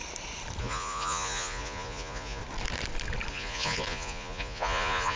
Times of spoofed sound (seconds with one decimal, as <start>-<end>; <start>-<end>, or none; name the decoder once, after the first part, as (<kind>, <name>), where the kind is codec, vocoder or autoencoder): 0.6-2.4 (vocoder, Vocos); 3.3-5.2